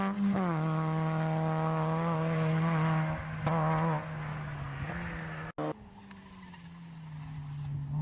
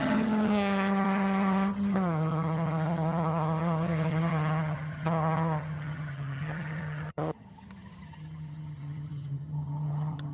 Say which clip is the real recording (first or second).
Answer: first